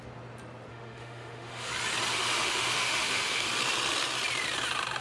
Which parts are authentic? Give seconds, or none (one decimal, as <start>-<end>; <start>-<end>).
0.0-0.7; 1.7-2.1; 3.5-5.0